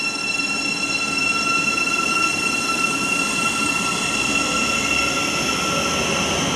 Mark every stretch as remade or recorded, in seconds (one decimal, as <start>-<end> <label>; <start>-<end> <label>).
0.0-2.3 recorded; 2.3-3.9 remade; 3.9-6.6 recorded

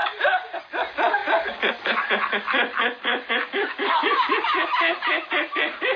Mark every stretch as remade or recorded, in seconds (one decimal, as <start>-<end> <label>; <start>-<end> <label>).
0.0-0.6 remade; 0.6-4.9 recorded; 4.9-5.5 remade; 5.5-6.0 recorded